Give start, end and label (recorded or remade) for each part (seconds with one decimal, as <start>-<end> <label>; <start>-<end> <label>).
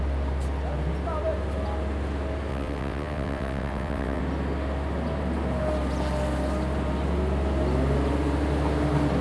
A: 0.0-2.5 recorded; 2.5-4.2 remade; 4.2-9.2 recorded